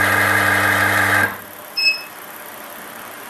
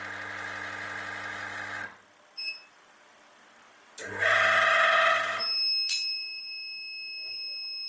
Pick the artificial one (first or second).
first